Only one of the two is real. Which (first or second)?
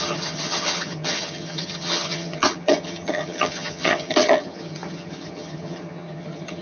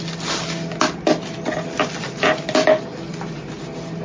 second